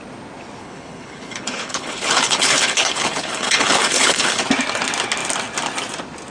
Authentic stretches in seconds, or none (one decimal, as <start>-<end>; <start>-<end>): 0.0-0.6; 4.4-6.3